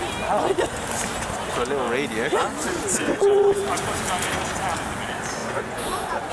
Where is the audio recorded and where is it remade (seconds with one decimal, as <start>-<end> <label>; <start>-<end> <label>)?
0.0-3.0 recorded; 3.0-3.6 remade; 3.6-5.4 recorded; 5.4-6.3 remade